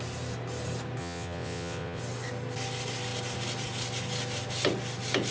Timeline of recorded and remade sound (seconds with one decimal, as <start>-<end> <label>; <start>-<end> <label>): 0.0-1.0 recorded; 1.0-2.0 remade; 2.0-5.3 recorded

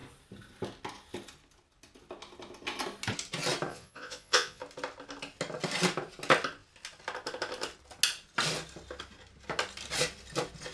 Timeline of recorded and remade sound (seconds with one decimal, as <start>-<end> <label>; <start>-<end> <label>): 0.0-3.7 recorded; 3.7-4.6 remade; 4.6-10.7 recorded